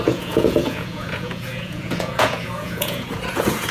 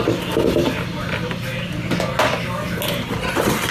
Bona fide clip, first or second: second